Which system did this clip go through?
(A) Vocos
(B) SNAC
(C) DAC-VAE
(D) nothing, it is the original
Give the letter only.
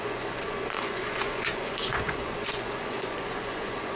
A